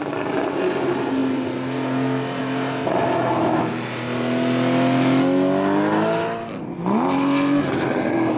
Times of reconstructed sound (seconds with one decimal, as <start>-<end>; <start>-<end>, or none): none

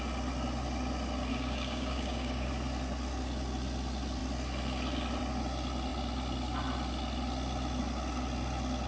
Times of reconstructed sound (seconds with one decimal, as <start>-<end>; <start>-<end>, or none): 1.3-2.5

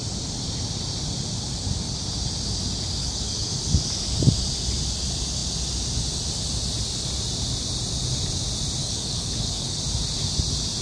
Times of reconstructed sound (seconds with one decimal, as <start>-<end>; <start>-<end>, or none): 3.0-3.6; 8.8-9.8

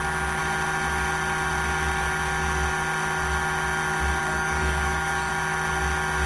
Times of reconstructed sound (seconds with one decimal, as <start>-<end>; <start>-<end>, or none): 4.2-5.3

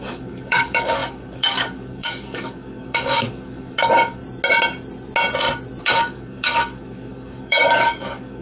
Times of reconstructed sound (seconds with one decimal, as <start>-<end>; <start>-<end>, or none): 0.0-4.2; 5.8-8.4

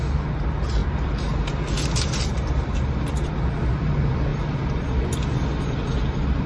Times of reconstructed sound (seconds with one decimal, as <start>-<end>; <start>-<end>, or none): none

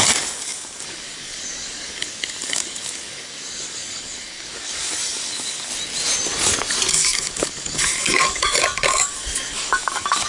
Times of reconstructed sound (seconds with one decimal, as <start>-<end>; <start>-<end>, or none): 0.0-5.7; 6.9-10.3